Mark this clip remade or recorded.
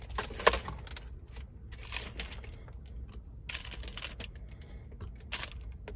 recorded